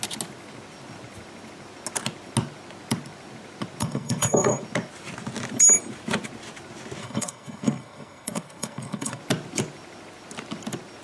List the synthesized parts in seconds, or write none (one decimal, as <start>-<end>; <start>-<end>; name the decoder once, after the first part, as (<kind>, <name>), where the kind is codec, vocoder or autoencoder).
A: 3.8-4.6 (codec, SNAC); 7.0-9.2